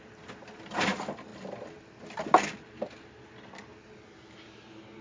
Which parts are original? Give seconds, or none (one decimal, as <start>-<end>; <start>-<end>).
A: 0.0-5.0